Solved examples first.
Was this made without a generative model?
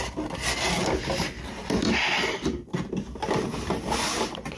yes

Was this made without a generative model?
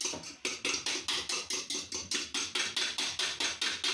yes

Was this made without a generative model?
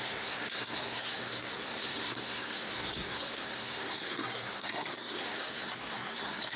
no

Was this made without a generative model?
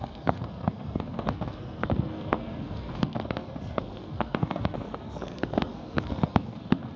no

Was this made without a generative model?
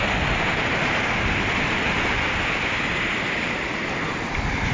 yes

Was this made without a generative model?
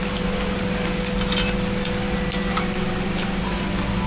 yes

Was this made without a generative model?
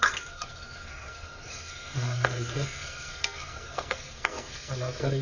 no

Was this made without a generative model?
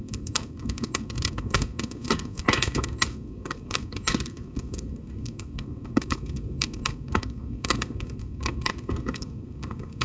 no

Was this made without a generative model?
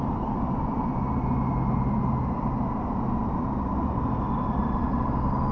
yes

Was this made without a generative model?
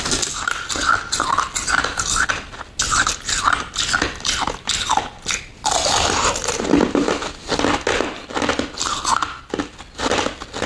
yes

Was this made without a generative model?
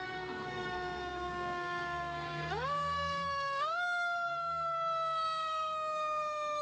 no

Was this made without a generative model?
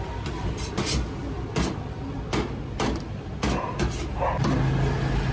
yes